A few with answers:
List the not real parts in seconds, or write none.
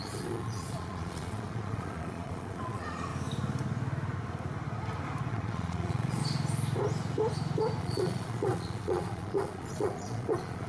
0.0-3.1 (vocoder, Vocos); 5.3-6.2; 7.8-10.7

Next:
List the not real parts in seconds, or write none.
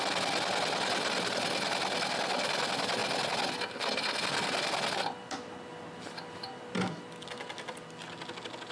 none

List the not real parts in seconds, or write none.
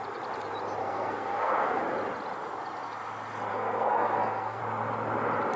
0.8-1.8 (codec, SNAC); 3.5-4.6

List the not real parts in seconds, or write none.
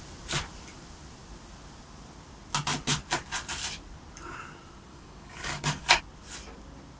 4.9-6.0 (codec, DAC)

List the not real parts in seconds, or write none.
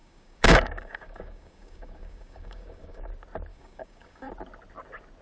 0.0-3.1 (codec, DAC); 3.5-4.3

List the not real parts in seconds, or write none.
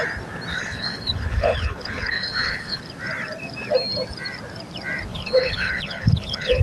0.5-2.8 (codec, HILCodec); 5.1-6.6